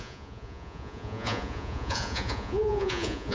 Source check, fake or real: fake